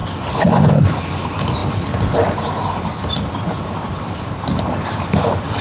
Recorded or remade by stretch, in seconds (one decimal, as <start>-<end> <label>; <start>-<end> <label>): 0.0-1.6 remade; 1.6-2.6 recorded; 2.6-5.6 remade